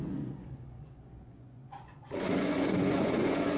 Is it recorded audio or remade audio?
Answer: remade